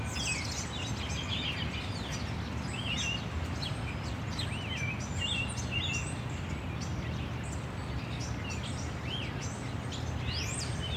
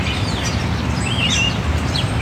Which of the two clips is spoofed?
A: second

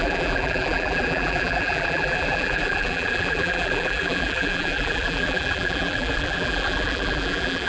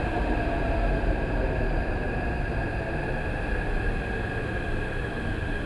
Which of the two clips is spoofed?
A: first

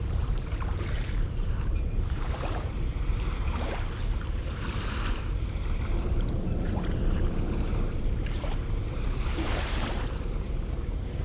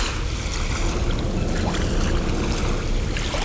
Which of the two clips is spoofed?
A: first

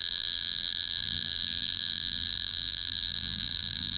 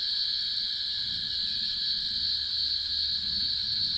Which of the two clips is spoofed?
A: first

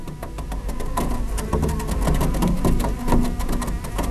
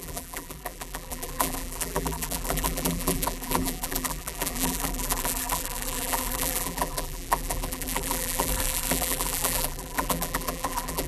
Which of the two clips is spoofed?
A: second